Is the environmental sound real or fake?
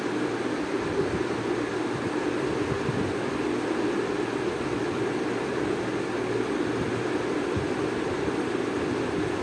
real